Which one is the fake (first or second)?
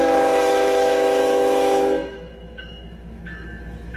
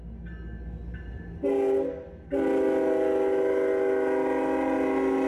first